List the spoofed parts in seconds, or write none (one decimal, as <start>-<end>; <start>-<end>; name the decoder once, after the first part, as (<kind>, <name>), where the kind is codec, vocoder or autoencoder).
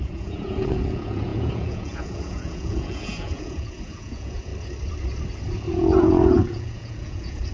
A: 0.0-4.5 (vocoder, Vocos); 5.7-7.5